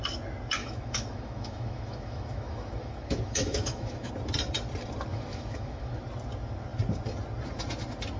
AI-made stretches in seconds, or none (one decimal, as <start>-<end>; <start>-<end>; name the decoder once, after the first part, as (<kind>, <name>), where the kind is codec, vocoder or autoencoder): 0.6-4.1 (autoencoder, DAC-VAE); 5.1-6.0